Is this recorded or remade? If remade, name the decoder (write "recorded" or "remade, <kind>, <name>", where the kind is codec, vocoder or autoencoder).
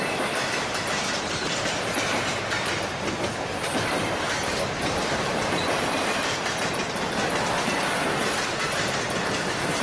remade, vocoder, BigVGAN v2